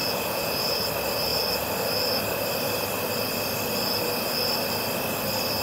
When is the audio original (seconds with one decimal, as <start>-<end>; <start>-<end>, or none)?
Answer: 0.9-5.6